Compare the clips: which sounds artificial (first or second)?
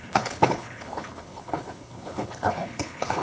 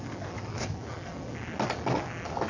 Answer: first